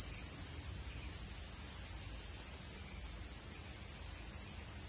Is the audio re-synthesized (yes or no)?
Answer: no